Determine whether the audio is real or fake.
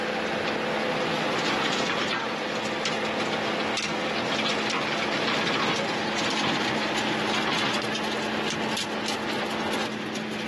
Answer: real